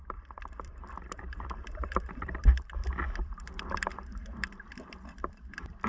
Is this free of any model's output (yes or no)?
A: no